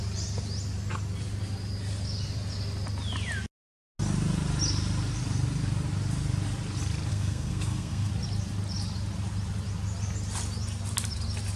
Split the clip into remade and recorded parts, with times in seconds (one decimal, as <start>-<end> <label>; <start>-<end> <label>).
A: 0.0-7.1 recorded; 7.1-8.1 remade; 8.1-11.6 recorded